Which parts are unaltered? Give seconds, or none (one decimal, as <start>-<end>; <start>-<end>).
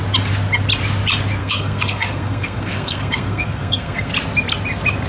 0.0-1.4; 4.1-5.1